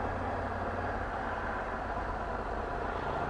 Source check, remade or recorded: recorded